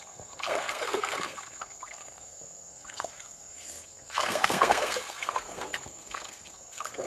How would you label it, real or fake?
fake